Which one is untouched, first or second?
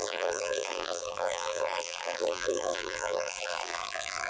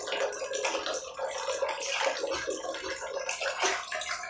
second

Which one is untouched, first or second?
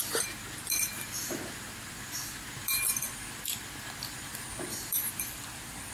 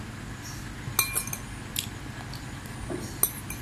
second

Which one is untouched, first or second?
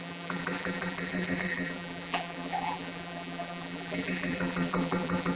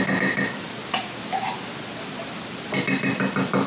second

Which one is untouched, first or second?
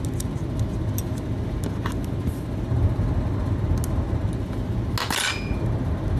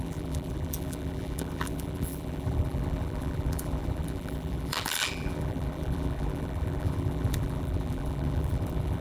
first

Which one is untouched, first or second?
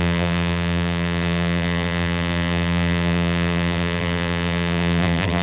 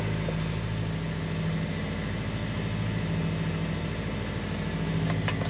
second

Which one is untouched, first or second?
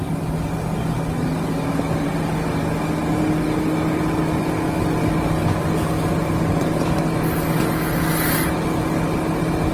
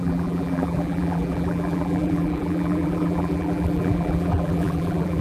first